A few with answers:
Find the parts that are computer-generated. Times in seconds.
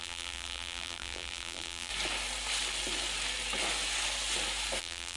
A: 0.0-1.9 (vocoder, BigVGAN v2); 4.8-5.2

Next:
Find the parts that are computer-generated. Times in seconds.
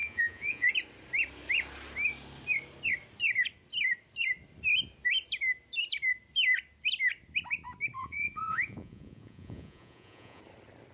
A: 0.0-0.7 (vocoder, Vocos); 8.0-10.4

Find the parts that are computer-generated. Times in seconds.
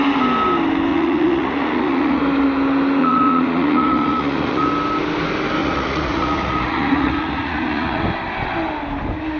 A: 0.9-2.2 (vocoder, Vocos); 3.0-4.7; 5.6-8.0